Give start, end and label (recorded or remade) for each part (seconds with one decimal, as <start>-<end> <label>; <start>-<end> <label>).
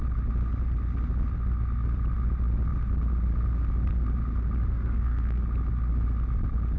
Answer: 0.0-4.7 recorded; 4.7-5.4 remade; 5.4-6.8 recorded